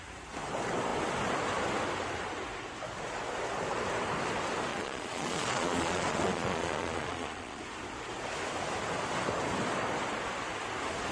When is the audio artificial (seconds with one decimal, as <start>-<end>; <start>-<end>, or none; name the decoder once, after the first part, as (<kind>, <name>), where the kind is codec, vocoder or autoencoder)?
4.7-7.6 (vocoder, Vocos)